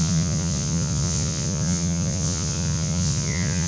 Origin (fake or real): fake